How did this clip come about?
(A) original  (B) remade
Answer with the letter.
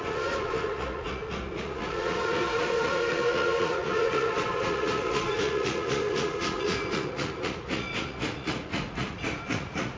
B